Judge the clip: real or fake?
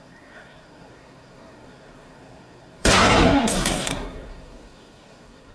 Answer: fake